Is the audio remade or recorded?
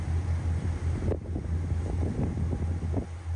recorded